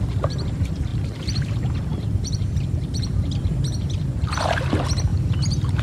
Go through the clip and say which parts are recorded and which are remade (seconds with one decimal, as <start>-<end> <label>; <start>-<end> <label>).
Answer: 0.0-0.9 recorded; 0.9-3.6 remade; 3.6-5.1 recorded; 5.1-5.8 remade